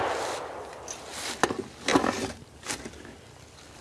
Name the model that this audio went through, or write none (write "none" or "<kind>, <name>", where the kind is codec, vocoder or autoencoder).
none